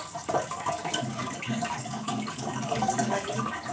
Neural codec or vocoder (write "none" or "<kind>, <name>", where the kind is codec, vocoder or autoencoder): codec, DAC